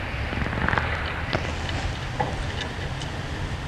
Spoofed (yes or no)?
no